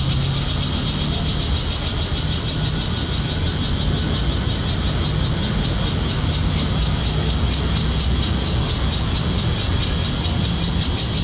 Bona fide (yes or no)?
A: yes